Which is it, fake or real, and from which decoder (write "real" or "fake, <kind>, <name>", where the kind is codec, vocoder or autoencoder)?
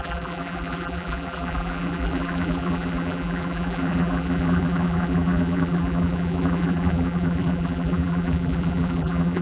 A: fake, vocoder, BigVGAN v2